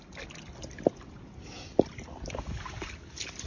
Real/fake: real